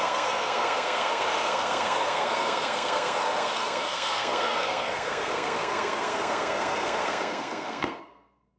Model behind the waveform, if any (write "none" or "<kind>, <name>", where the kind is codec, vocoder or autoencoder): codec, SNAC